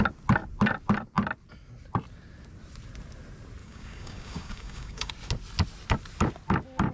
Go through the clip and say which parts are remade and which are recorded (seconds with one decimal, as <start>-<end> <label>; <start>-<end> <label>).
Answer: 0.0-3.6 recorded; 3.6-5.1 remade; 5.1-6.9 recorded

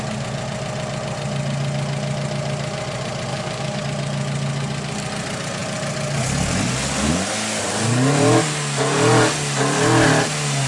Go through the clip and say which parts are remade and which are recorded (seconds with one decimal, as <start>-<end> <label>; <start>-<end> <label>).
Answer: 0.0-3.3 recorded; 3.3-3.8 remade; 3.8-10.7 recorded

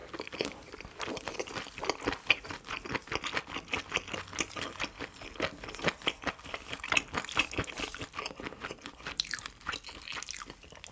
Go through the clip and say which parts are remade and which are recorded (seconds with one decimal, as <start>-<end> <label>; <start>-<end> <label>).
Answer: 0.0-10.9 recorded

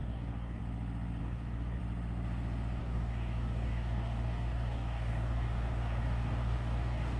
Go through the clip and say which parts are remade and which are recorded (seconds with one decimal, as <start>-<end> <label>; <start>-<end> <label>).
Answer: 0.0-0.6 remade; 0.6-1.2 recorded; 1.2-1.8 remade; 1.8-2.8 recorded; 2.8-7.2 remade

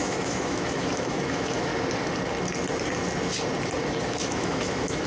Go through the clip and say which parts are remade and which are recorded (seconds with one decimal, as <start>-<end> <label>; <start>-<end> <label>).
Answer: 0.0-1.7 remade; 1.7-4.0 recorded; 4.0-5.1 remade